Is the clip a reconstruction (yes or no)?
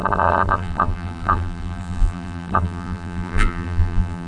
yes